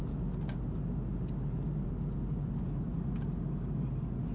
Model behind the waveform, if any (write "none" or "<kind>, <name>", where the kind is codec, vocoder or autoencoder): none